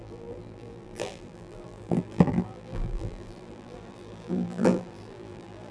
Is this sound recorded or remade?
remade